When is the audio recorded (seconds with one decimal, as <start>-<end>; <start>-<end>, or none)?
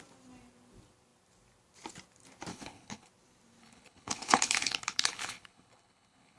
0.0-2.5; 3.1-3.6